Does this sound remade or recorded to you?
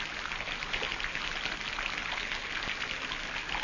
recorded